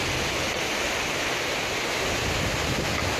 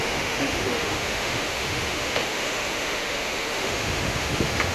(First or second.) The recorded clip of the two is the first